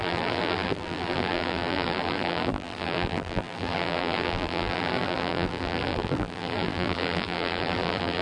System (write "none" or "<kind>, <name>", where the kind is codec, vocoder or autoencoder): vocoder, BigVGAN v2